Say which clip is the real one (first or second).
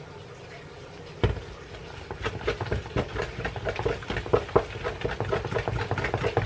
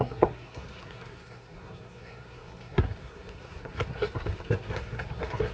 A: first